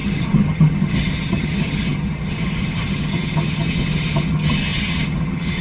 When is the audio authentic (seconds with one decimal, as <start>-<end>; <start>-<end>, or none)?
none